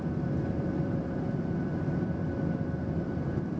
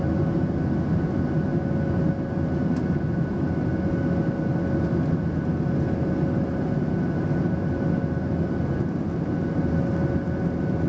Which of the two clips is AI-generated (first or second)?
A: first